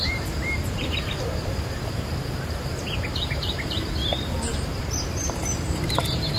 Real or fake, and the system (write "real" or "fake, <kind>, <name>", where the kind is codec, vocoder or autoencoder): fake, vocoder, BigVGAN v2